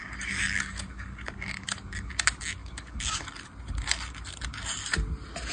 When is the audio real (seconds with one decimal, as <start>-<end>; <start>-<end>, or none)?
2.1-2.6; 3.3-5.5